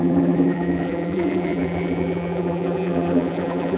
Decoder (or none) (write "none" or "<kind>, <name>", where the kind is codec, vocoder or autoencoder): vocoder, BigVGAN v2